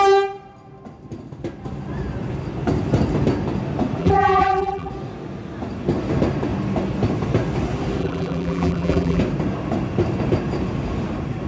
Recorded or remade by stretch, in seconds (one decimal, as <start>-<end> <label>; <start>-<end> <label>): 0.0-4.0 recorded; 4.0-4.9 remade; 4.9-8.0 recorded; 8.0-9.2 remade; 9.2-11.5 recorded